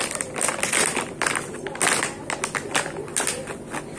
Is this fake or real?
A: real